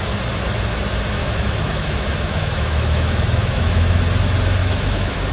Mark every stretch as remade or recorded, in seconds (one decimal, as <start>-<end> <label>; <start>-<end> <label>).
0.0-1.2 recorded; 1.2-4.0 remade; 4.0-4.6 recorded; 4.6-5.3 remade